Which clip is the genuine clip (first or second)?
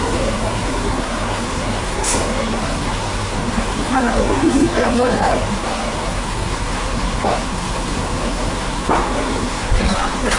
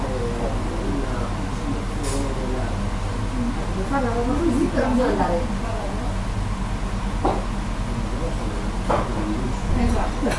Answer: second